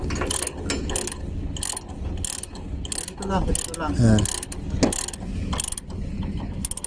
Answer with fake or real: real